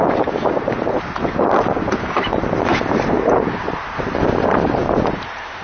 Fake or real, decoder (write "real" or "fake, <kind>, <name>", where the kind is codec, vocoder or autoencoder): fake, vocoder, BigVGAN v2